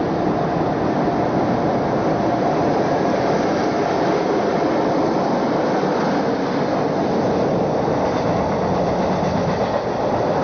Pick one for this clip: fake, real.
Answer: real